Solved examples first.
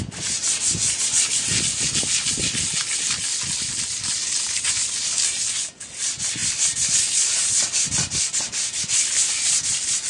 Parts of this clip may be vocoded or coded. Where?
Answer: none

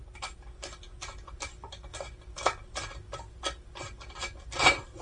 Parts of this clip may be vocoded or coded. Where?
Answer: none

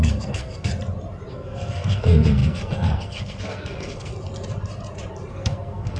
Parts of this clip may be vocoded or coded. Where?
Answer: 0.0-0.7; 1.3-4.1; 5.3-6.0

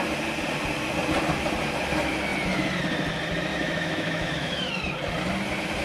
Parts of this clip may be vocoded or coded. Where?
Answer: 3.5-4.7

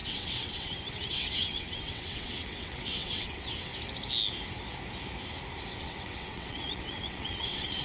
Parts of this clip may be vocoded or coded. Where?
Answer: 0.0-3.7; 5.8-7.8

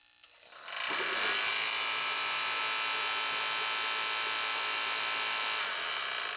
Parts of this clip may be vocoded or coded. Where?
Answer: 1.5-2.6; 4.5-5.4

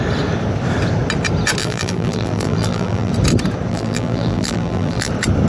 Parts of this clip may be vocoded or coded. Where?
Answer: 1.6-3.1; 3.7-5.1

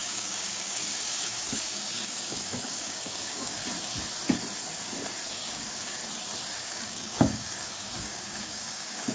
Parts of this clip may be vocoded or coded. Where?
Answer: 0.0-3.6; 5.3-6.0; 6.6-9.1